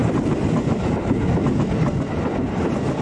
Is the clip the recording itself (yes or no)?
yes